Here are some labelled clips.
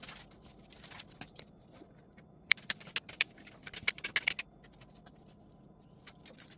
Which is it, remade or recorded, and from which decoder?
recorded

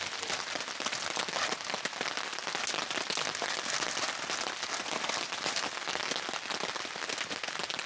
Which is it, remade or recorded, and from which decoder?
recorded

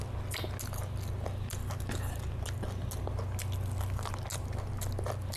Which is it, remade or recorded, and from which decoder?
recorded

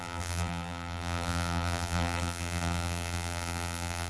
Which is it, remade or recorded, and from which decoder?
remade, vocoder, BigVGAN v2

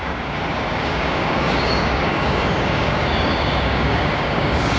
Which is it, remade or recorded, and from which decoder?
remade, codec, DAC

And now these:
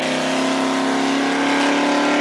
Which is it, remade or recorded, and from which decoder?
recorded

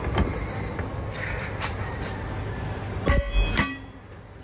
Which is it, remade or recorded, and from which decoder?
recorded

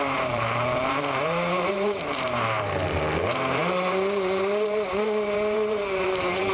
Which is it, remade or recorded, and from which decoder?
remade, vocoder, BigVGAN v2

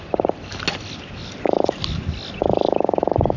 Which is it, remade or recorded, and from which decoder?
recorded